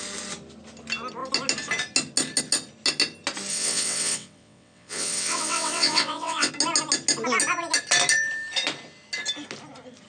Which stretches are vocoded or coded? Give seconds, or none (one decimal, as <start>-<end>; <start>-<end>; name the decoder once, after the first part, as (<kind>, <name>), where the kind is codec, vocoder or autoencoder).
3.5-6.5 (vocoder, WaveNeXt)